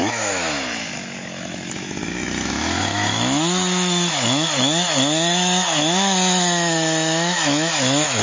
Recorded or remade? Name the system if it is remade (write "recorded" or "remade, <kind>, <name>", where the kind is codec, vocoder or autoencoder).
remade, autoencoder, DAC-VAE